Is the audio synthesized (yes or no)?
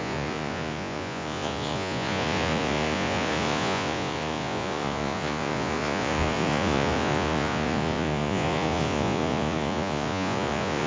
yes